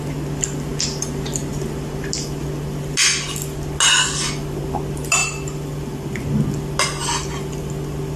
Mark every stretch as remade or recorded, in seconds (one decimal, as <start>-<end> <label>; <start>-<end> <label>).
0.0-5.2 recorded; 5.2-6.2 remade; 6.2-8.2 recorded